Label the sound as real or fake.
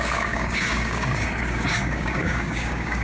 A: fake